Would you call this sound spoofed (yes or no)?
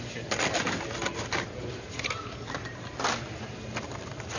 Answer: no